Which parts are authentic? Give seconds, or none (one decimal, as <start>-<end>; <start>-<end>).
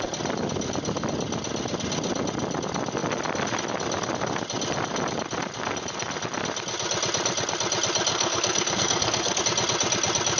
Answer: 0.0-8.1; 9.4-10.4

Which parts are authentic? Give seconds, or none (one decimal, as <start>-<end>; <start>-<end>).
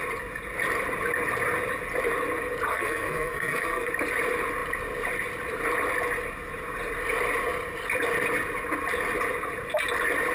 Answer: 0.0-2.7; 3.9-10.3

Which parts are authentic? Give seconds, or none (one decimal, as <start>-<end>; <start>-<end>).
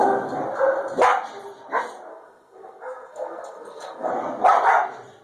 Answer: 0.0-2.1; 4.1-5.2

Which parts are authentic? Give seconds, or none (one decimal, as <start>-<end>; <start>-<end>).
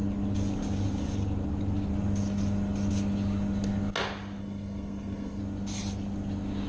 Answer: 0.0-4.4; 5.4-6.7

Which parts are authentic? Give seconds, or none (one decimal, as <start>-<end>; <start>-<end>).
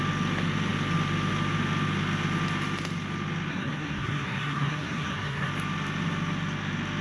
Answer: 0.0-3.5; 5.5-7.0